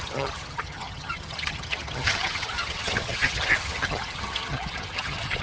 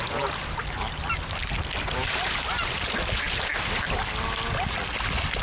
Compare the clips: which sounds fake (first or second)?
first